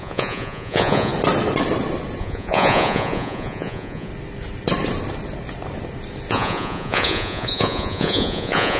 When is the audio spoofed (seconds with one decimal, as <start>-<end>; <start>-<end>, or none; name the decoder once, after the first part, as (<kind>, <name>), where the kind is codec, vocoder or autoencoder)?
0.0-1.1 (vocoder, Vocos); 2.2-4.1; 6.3-8.8